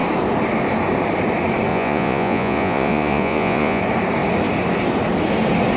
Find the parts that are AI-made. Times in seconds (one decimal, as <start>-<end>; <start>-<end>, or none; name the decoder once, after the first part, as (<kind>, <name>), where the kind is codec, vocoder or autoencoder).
1.7-3.8 (vocoder, Vocos)